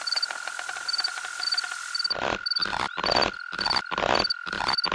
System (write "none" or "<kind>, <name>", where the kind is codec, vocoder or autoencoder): none